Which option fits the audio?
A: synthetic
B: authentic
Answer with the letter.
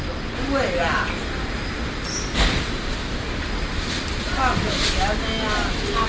B